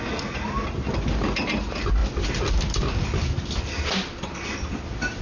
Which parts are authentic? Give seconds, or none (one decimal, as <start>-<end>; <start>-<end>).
0.0-5.2